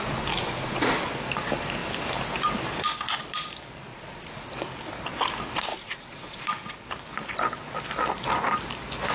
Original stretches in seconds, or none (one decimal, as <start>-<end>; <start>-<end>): 0.0-0.4; 1.0-3.9; 4.5-5.7; 6.4-9.1